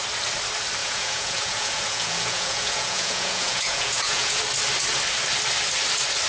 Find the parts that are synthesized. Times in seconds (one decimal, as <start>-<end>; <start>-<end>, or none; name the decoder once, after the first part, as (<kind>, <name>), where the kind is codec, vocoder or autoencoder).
0.8-4.4 (vocoder, Vocos)